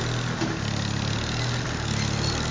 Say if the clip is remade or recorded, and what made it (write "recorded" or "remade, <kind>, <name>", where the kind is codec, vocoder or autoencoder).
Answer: recorded